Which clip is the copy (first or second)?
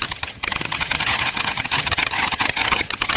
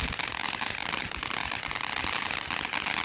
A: first